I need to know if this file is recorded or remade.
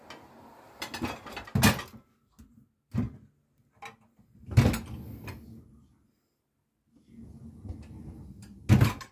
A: recorded